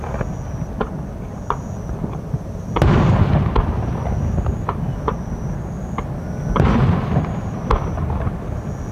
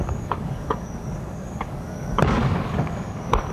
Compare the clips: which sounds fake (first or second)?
second